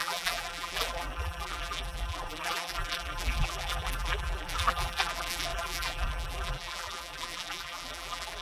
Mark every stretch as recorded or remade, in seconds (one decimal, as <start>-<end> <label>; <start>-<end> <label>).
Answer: 0.0-8.4 remade